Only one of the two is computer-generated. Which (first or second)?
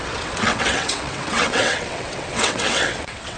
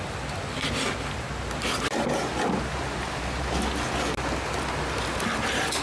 first